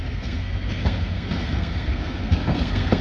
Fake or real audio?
fake